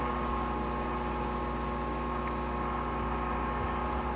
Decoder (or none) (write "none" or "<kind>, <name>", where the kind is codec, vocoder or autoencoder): none